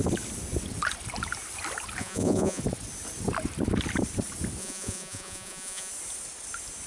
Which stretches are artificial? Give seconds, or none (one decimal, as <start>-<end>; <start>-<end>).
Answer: 2.0-2.6; 4.6-5.9